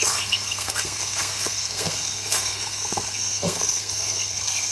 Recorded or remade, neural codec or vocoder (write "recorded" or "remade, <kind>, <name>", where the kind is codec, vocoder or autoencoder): remade, codec, SNAC